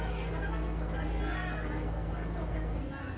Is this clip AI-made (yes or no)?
yes